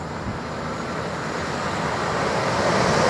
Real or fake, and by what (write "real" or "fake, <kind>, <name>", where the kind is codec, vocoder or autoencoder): real